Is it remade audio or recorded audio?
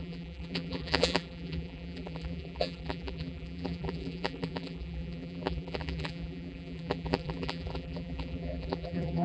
remade